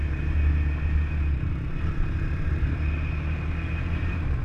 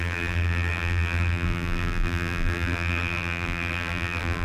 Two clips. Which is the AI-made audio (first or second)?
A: second